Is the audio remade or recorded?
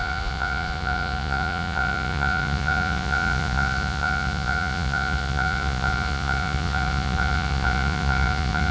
remade